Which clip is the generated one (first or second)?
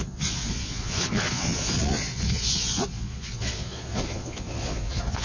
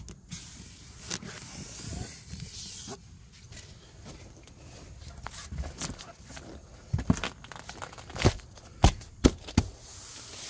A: first